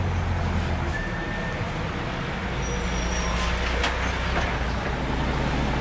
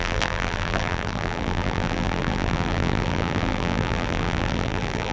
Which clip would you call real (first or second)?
first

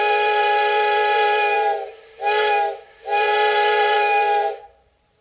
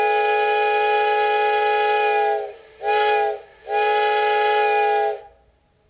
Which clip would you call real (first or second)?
second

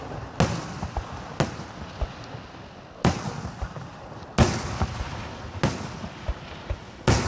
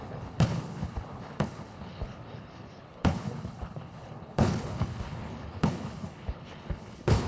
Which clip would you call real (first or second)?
first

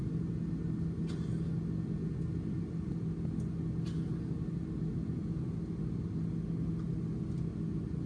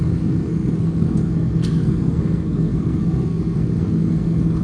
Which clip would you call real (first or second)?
first